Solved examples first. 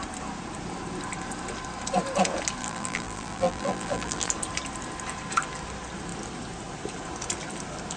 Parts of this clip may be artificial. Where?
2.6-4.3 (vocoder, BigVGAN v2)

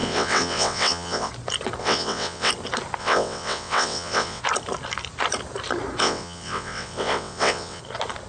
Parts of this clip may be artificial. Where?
0.0-1.3 (vocoder, WaveNeXt); 1.8-2.5; 3.0-4.4; 6.0-7.8

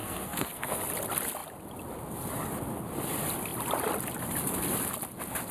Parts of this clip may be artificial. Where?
0.0-0.8 (codec, SNAC)